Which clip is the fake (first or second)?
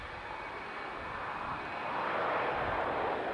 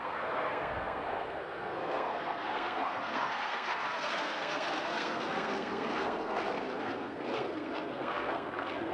second